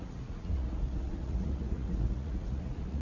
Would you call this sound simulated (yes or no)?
yes